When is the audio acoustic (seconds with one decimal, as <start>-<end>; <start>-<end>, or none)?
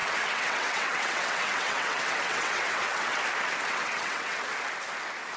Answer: 3.2-3.7; 4.4-5.4